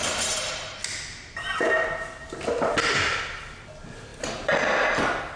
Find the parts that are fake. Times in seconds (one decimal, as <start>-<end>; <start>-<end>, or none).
none